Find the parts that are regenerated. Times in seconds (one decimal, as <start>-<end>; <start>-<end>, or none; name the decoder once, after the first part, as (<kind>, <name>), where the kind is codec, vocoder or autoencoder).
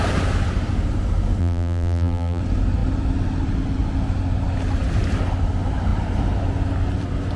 1.4-2.4 (vocoder, BigVGAN v2)